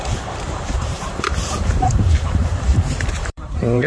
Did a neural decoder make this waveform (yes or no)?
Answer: yes